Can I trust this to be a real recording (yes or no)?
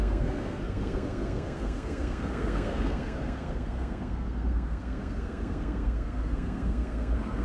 no